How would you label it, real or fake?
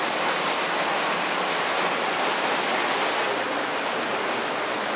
real